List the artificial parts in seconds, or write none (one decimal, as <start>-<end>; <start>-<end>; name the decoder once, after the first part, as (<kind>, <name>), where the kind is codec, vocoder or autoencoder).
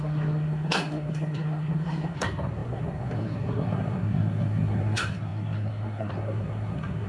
0.0-7.1 (codec, SNAC)